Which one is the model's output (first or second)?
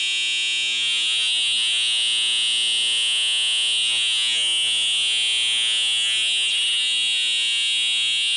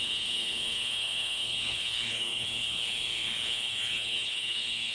second